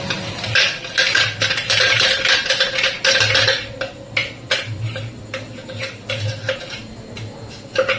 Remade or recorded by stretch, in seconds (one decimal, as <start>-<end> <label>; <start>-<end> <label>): 0.0-1.6 recorded; 1.6-2.1 remade; 2.1-4.2 recorded; 4.2-5.2 remade; 5.2-8.0 recorded